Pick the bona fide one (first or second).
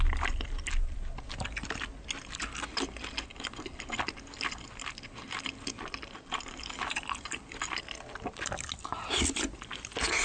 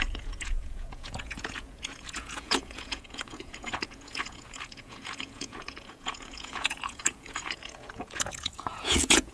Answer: first